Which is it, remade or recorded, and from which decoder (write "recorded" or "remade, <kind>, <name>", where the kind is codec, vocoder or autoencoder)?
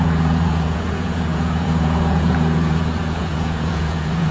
remade, vocoder, Vocos